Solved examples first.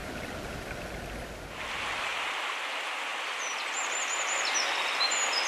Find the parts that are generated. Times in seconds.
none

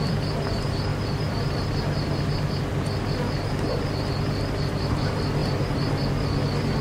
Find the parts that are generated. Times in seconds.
0.9-1.7 (vocoder, BigVGAN v2); 5.4-5.9

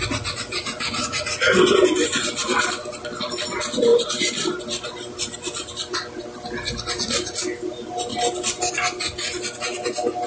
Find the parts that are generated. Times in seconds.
none

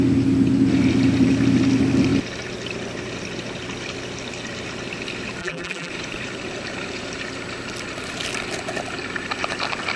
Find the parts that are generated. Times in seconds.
5.4-5.9 (vocoder, BigVGAN v2)